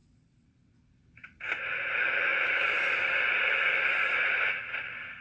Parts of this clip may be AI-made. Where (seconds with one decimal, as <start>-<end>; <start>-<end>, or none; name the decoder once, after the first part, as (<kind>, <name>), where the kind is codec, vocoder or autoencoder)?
0.0-1.6 (vocoder, BigVGAN v2)